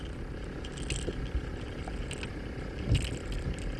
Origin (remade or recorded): recorded